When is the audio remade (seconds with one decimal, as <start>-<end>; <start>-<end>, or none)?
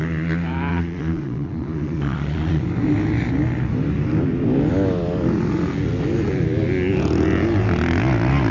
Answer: 0.7-2.6